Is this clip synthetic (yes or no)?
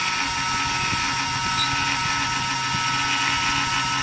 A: no